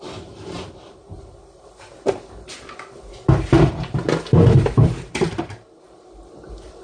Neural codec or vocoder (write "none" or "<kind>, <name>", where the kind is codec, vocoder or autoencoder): vocoder, BigVGAN v2